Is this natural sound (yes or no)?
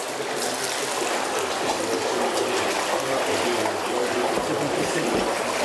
yes